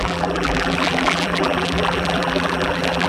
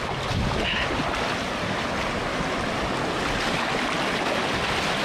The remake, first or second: first